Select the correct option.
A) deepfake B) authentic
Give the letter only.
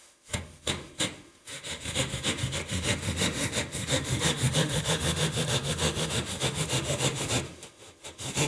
A